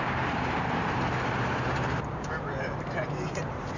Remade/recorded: remade